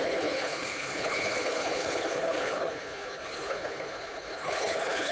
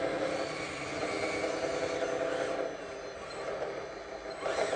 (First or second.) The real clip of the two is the second